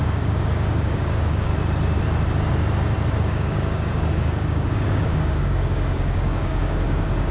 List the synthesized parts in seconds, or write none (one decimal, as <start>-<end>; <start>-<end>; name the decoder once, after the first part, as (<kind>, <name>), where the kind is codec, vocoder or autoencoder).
0.0-1.5 (codec, DAC); 3.2-7.3